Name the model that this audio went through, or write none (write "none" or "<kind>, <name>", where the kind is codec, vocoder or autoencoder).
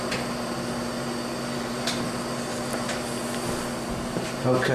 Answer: none